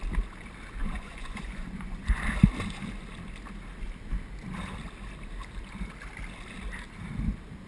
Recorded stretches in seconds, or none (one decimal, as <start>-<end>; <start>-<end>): 0.0-0.8; 2.2-7.7